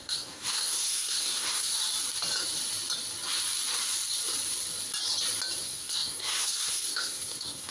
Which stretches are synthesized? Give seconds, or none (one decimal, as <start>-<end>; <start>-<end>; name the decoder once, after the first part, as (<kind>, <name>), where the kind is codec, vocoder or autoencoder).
0.0-1.8 (codec, SNAC); 5.6-7.7